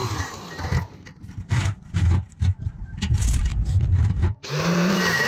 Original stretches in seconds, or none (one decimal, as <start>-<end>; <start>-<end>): 0.0-2.6; 3.5-4.2